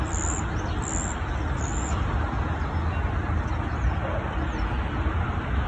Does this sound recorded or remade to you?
recorded